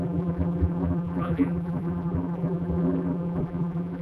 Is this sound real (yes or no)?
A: no